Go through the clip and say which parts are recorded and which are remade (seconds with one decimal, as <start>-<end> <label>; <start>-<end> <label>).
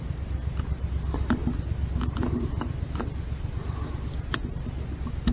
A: 0.0-5.3 recorded